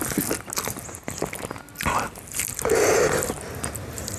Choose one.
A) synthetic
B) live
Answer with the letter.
B